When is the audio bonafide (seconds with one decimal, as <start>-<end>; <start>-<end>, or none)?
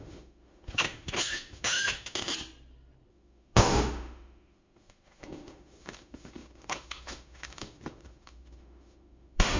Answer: 2.3-3.1